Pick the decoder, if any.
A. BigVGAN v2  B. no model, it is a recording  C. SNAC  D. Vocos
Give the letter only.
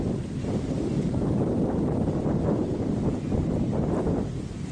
B